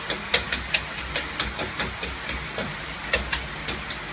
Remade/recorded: recorded